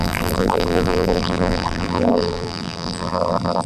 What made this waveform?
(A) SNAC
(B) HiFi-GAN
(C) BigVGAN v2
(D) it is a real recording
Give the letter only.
C